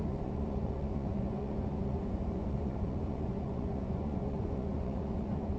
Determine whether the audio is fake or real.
fake